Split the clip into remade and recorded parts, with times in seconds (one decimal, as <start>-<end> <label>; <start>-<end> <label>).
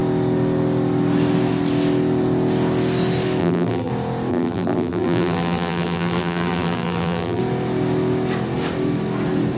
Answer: 0.0-3.4 recorded; 3.4-3.9 remade; 3.9-4.3 recorded; 4.3-7.4 remade; 7.4-9.6 recorded